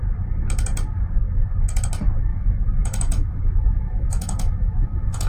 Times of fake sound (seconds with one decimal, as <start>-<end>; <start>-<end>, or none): 2.3-5.3